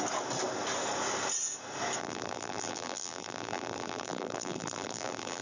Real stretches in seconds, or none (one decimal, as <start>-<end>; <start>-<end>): 0.0-2.0